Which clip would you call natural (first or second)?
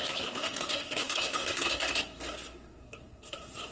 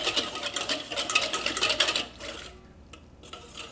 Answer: second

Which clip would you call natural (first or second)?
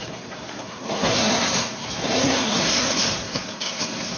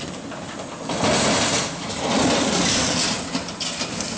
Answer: second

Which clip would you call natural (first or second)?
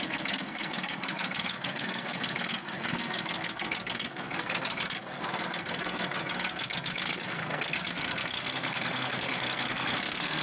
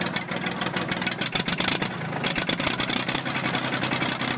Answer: second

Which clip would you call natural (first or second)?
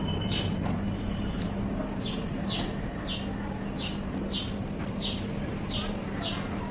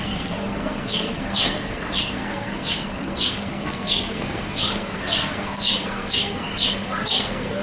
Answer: first